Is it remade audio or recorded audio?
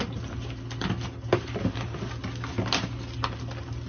recorded